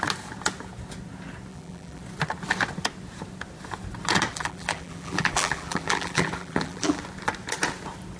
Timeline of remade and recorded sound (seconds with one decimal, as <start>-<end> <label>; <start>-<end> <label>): 0.0-1.5 recorded; 1.5-2.0 remade; 2.0-4.3 recorded; 4.3-7.0 remade; 7.0-8.2 recorded